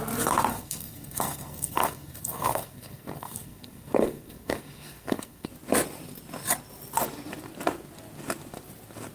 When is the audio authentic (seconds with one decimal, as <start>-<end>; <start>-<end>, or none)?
0.0-0.5; 5.5-9.1